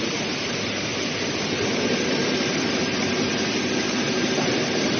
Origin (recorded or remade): remade